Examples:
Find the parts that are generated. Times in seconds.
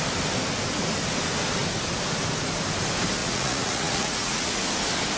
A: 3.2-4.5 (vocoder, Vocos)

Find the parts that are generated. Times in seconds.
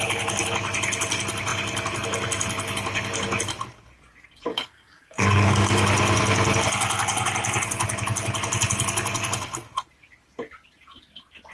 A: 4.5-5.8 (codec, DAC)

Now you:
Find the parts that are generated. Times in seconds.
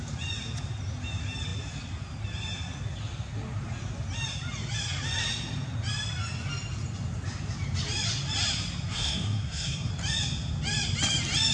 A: 8.9-9.9 (codec, SNAC)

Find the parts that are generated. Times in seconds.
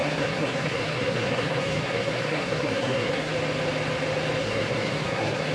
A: 0.0-3.3 (codec, SNAC); 4.4-5.5